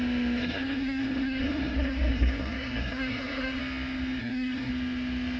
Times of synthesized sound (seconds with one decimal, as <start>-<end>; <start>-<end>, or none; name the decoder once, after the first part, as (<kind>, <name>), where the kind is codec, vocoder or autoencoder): 0.4-3.6 (codec, SNAC); 4.2-4.7